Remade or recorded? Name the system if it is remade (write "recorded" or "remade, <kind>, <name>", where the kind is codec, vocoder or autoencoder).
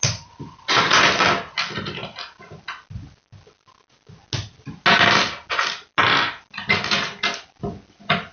recorded